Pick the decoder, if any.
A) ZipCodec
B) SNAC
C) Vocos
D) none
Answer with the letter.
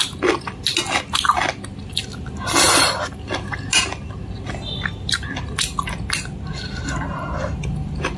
D